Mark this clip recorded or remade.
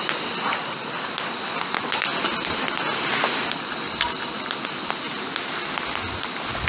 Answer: recorded